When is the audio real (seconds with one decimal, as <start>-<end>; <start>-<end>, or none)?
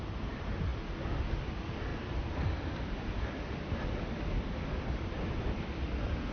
0.0-6.3